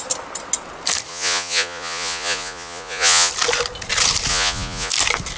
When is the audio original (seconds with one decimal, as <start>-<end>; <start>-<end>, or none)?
0.0-1.1; 3.3-4.3; 4.9-5.4